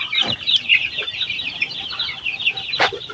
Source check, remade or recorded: remade